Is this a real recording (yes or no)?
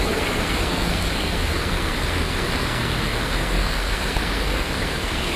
no